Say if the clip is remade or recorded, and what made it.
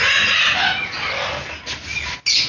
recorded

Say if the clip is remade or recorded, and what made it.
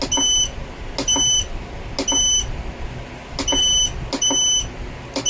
recorded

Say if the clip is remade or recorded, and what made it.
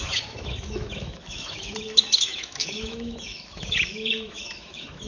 remade, autoencoder, DAC-VAE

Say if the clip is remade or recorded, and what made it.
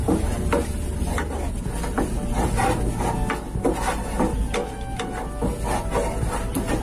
recorded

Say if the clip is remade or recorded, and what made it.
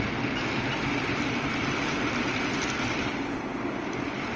remade, vocoder, BigVGAN v2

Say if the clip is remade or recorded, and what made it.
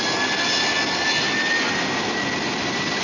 recorded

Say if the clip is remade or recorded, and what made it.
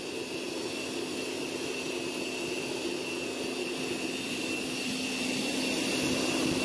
recorded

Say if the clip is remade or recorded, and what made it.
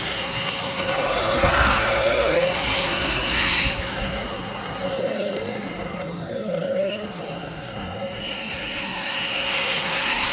remade, codec, SNAC